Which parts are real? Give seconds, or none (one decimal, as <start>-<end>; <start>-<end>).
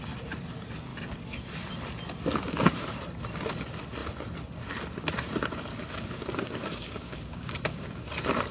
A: 0.0-5.7; 8.1-8.5